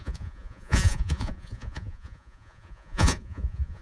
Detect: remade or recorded remade